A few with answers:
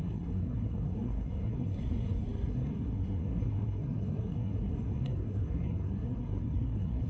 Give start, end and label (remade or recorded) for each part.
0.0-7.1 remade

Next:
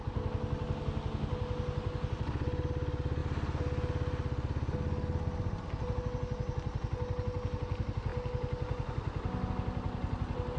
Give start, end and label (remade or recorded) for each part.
0.0-10.6 recorded

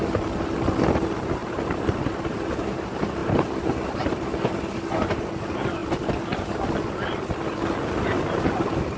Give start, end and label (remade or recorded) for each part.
0.0-1.4 recorded; 1.4-2.1 remade; 2.1-5.8 recorded; 5.8-8.4 remade; 8.4-9.0 recorded

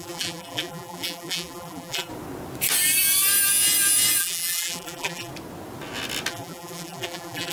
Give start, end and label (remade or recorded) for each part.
0.0-2.1 remade; 2.1-4.2 recorded; 4.2-5.3 remade; 5.3-6.3 recorded; 6.3-7.5 remade

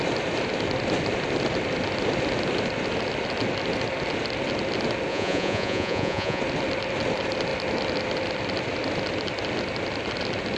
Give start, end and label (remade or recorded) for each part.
0.0-5.1 recorded; 5.1-6.4 remade; 6.4-10.6 recorded

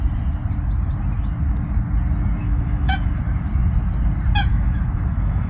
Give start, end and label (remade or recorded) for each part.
0.0-2.4 recorded; 2.4-3.2 remade; 3.2-4.5 recorded; 4.5-5.5 remade

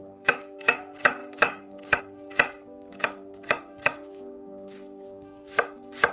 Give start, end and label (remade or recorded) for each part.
0.0-6.1 remade

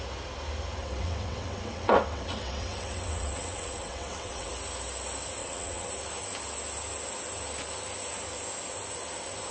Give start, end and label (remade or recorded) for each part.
0.0-0.8 recorded; 0.8-4.5 remade; 4.5-5.4 recorded; 5.4-5.9 remade; 5.9-9.5 recorded